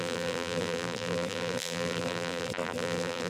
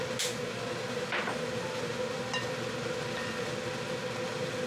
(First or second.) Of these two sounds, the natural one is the second